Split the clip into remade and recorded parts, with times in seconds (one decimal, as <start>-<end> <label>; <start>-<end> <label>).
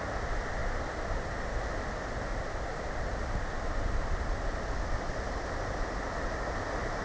0.0-0.6 recorded; 0.6-1.4 remade; 1.4-2.3 recorded; 2.3-6.5 remade; 6.5-7.0 recorded